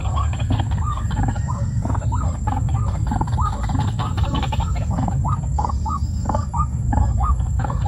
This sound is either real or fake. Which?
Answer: fake